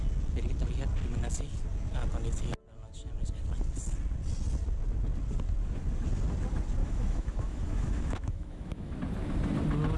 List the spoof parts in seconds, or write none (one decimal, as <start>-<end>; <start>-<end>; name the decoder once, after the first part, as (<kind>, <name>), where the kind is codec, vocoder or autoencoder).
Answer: 6.8-9.0 (autoencoder, DAC-VAE)